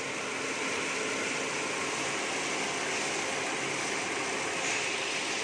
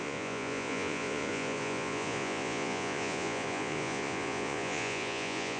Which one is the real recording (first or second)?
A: first